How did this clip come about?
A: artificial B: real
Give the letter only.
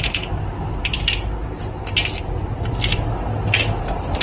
B